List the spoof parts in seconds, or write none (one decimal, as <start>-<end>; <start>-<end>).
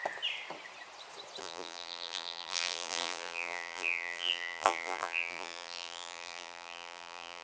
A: 1.4-7.4